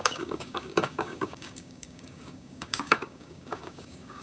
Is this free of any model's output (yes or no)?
no